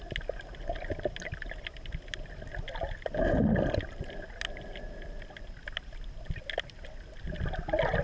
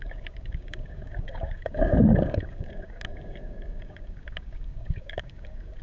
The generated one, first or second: second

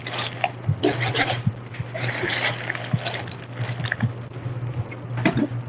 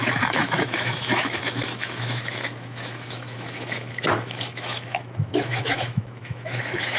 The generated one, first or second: second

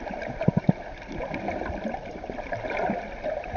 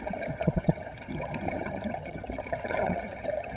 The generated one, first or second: second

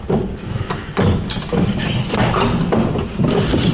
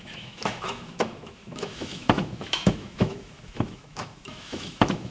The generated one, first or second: second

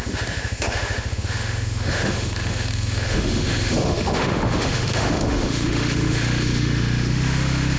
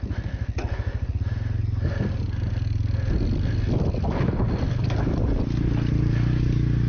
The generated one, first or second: first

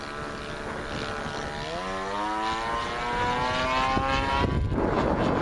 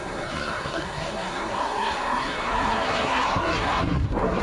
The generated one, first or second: second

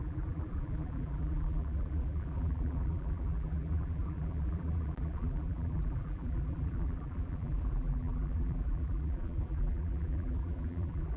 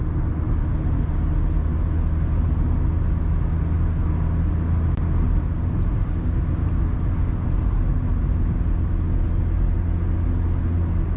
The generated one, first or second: first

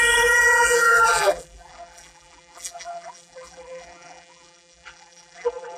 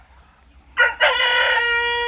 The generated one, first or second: first